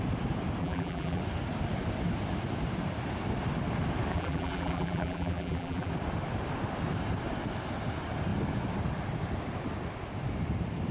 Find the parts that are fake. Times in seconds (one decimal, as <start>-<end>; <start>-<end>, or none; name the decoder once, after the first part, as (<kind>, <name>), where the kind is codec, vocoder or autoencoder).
0.6-1.2 (vocoder, BigVGAN v2); 4.1-5.9